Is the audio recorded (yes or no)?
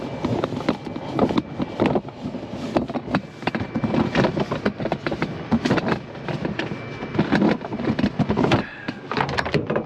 yes